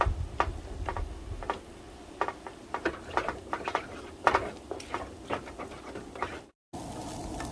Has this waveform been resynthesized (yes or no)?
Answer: no